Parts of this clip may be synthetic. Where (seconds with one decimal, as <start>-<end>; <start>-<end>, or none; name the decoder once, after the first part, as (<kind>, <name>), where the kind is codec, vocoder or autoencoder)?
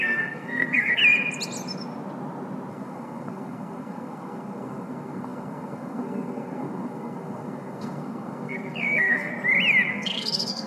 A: 0.0-1.0 (codec, SNAC); 2.7-9.3; 9.9-10.7